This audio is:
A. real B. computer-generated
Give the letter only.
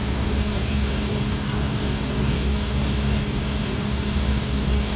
B